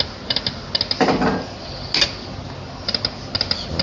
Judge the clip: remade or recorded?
recorded